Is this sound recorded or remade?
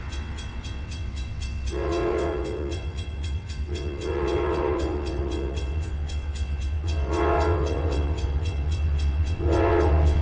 remade